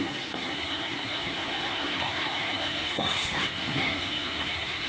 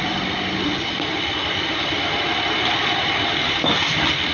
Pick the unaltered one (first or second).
second